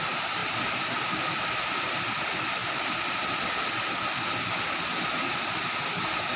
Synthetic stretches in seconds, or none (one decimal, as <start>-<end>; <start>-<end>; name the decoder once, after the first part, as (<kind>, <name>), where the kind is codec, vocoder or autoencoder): none